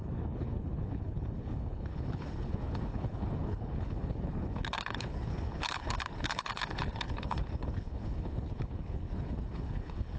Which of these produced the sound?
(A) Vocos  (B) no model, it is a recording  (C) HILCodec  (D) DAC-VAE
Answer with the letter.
C